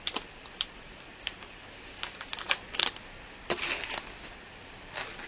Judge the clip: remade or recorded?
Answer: recorded